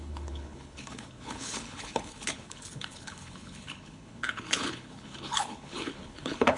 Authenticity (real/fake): fake